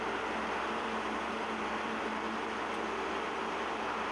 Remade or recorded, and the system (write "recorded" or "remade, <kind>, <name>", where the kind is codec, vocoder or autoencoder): recorded